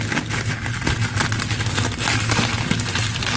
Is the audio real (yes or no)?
yes